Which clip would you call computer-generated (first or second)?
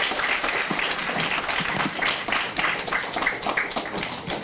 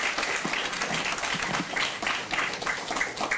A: first